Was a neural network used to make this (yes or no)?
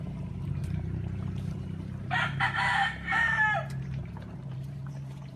yes